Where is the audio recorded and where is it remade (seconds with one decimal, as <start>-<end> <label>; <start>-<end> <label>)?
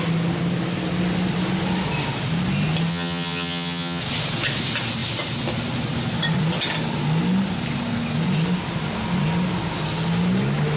0.0-2.9 recorded; 2.9-4.0 remade; 4.0-10.8 recorded